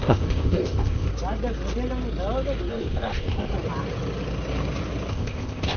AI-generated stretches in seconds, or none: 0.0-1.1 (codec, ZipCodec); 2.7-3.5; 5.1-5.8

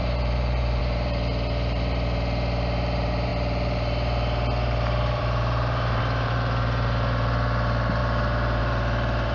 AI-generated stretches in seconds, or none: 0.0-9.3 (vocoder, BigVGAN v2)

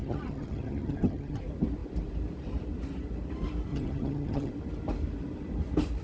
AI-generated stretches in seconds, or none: 0.0-1.4 (vocoder, HiFi-GAN); 3.7-4.5

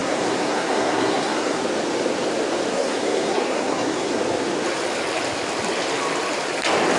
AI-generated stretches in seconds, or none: 0.0-1.6 (codec, SNAC); 2.7-4.2